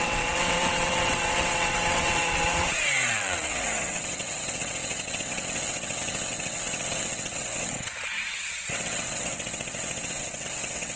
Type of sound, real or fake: fake